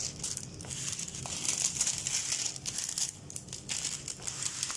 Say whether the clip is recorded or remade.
recorded